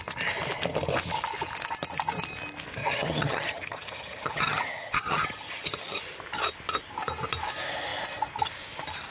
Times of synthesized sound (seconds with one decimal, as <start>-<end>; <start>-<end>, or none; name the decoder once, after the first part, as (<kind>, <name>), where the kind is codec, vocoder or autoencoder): 2.8-6.0 (vocoder, HiFi-GAN)